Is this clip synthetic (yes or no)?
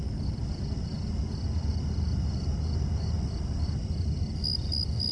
no